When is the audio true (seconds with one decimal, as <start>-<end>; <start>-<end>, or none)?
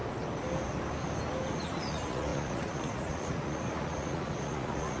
0.0-1.6